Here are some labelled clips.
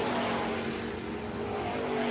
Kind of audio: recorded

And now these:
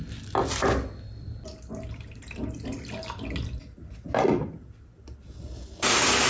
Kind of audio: recorded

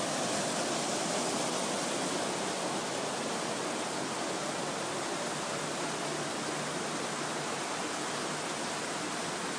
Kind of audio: recorded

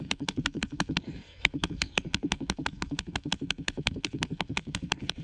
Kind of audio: remade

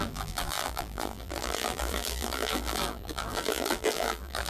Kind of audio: remade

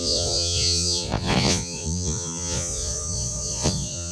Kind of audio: remade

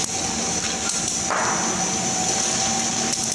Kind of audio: recorded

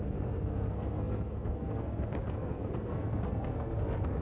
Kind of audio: remade